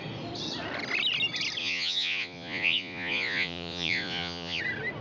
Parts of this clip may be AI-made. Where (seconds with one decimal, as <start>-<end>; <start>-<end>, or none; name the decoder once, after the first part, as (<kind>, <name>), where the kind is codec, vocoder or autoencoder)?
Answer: 1.6-4.6 (vocoder, Vocos)